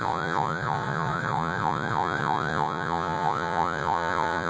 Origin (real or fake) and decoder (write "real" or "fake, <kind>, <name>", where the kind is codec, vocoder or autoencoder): fake, vocoder, Vocos